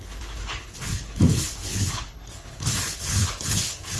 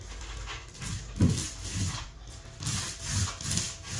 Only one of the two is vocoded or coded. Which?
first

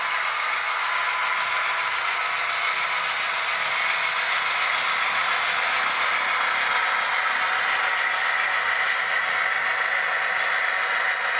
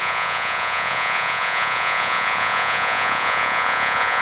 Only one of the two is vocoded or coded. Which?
second